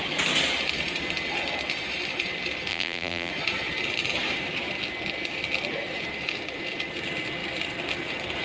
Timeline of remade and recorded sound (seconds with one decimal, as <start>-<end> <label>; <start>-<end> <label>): 0.0-2.7 recorded; 2.7-3.3 remade; 3.3-8.4 recorded